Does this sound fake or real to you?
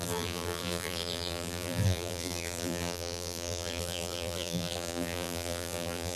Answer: fake